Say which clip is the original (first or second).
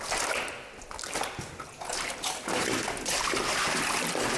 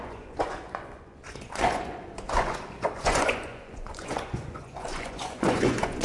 first